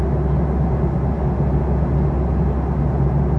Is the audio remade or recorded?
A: recorded